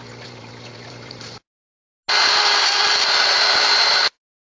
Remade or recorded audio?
recorded